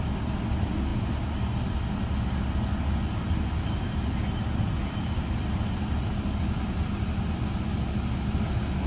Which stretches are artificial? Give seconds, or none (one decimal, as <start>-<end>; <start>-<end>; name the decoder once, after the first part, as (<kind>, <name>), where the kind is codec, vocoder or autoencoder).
none